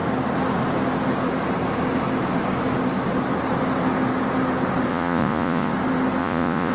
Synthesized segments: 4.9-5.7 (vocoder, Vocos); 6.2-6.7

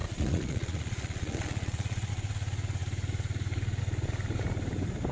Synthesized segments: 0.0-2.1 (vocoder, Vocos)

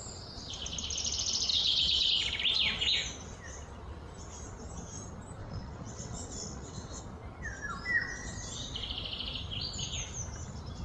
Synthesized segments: 1.5-2.1 (vocoder, WaveNeXt); 5.4-7.0

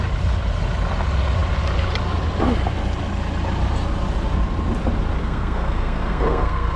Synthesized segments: 5.2-6.8 (codec, SNAC)

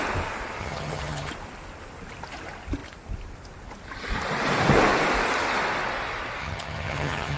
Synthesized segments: 0.6-1.3 (vocoder, HiFi-GAN); 6.4-7.4